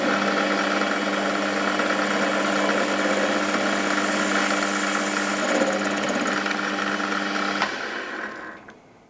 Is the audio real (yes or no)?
yes